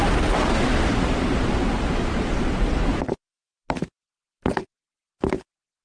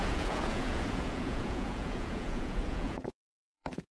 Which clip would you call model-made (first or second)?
second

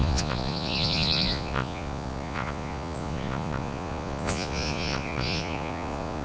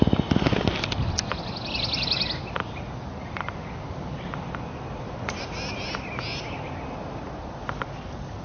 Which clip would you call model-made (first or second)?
first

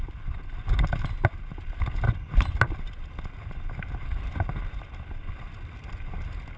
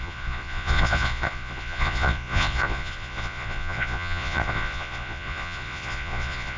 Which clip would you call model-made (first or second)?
second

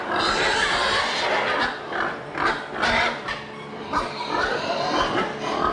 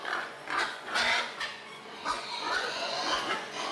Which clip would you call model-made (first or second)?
second